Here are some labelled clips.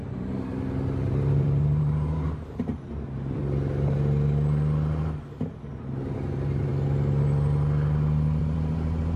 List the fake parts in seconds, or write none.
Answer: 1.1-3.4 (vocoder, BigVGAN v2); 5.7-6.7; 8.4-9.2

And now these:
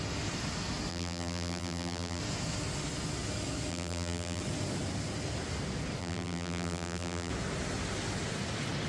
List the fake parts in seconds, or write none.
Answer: 0.9-2.2 (vocoder, BigVGAN v2); 3.7-4.4; 6.0-7.3

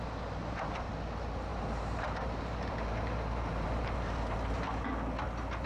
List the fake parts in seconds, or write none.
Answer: 0.4-0.9 (vocoder, BigVGAN v2); 1.5-4.9

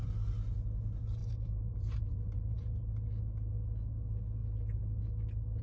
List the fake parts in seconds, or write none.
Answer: 1.2-2.8 (vocoder, BigVGAN v2)

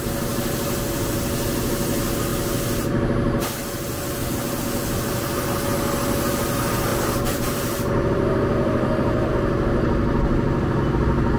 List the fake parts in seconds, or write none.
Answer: 6.9-9.3 (vocoder, BigVGAN v2)

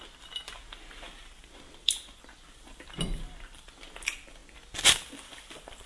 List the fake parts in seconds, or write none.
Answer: 0.0-0.4 (vocoder, BigVGAN v2); 1.1-4.4; 5.1-5.9

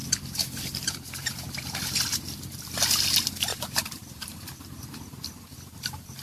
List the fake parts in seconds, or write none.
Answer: 0.0-2.6 (vocoder, BigVGAN v2); 3.5-4.9

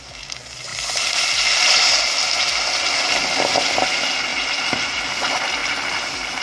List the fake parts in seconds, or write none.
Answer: 0.7-1.4 (vocoder, BigVGAN v2); 4.3-5.1